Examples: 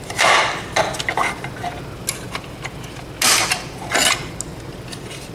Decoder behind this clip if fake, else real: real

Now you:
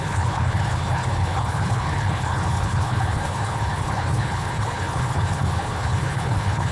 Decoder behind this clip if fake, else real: fake, codec, HILCodec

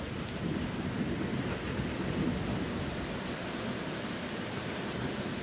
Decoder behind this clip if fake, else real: real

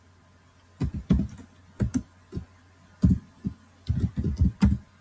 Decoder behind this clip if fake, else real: real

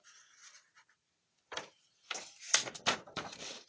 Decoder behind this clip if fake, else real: fake, vocoder, BigVGAN v2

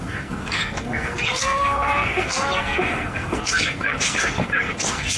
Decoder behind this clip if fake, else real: fake, codec, SNAC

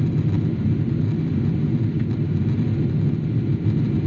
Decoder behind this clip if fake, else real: real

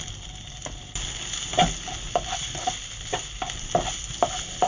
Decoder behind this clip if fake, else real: real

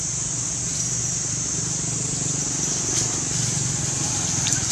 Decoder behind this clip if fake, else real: real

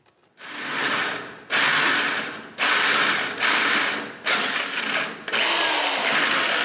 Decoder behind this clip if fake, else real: real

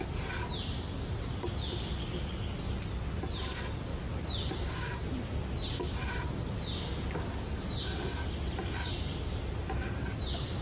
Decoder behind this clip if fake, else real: real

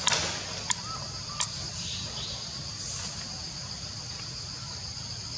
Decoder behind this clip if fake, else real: real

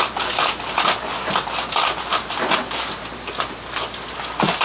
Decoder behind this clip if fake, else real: real